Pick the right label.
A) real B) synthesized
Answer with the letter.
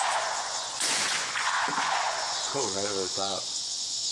B